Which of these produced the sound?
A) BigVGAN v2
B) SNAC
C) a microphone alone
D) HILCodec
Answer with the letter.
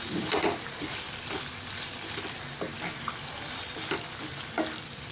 A